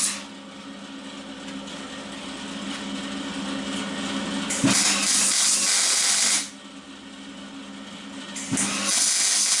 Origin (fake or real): real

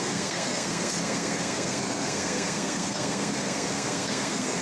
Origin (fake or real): fake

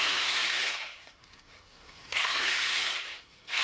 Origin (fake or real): fake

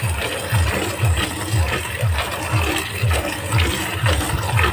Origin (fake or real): real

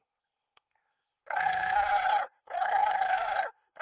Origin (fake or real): fake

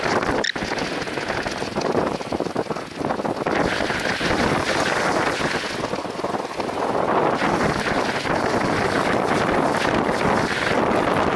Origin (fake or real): real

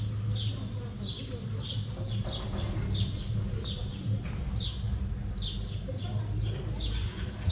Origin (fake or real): real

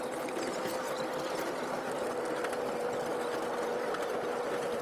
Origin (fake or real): real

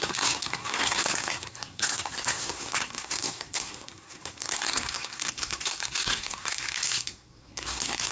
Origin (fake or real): fake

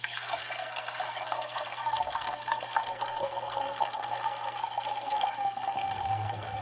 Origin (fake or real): fake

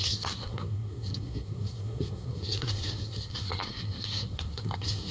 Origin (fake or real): fake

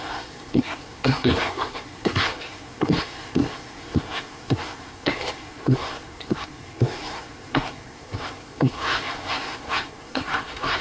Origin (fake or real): fake